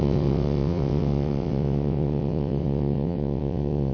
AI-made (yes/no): yes